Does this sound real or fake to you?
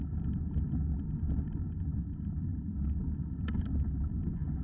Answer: real